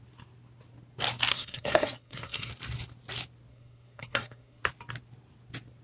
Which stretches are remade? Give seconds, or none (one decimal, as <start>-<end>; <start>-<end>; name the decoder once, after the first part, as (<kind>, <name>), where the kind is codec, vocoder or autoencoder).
1.3-2.5 (codec, SNAC); 3.5-4.6